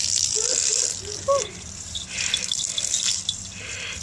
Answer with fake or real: real